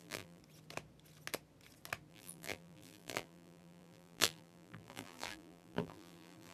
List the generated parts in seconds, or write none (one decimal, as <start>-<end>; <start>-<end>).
0.0-0.4; 2.1-6.5